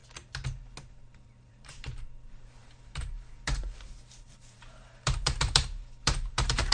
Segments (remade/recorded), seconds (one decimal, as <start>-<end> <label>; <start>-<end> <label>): 0.0-0.9 recorded; 0.9-6.7 remade